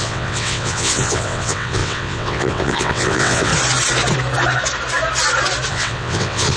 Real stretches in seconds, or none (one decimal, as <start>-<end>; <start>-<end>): 3.5-5.7

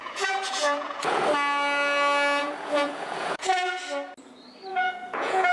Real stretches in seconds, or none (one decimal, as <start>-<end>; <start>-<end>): 1.2-2.4; 3.8-4.7

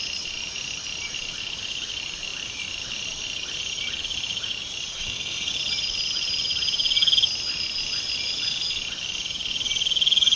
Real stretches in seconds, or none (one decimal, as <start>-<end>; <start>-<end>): 0.0-4.9; 5.5-10.4

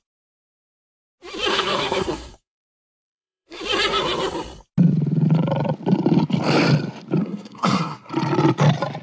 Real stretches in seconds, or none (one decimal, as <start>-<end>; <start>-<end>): 0.0-1.5; 3.6-7.2; 8.1-9.0

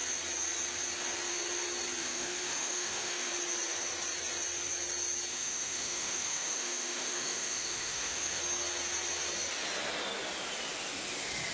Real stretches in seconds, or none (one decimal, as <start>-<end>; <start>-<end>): 0.0-2.0; 3.3-5.3; 8.4-11.5

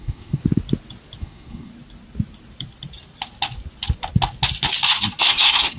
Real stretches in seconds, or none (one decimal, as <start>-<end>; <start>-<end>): 0.4-1.2; 1.7-5.2

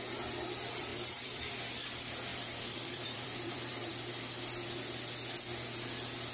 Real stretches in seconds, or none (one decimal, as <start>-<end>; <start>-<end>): 0.0-0.9; 1.5-2.3; 3.9-6.3